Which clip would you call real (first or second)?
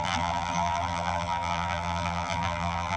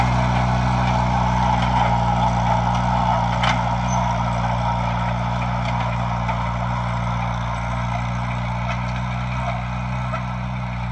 second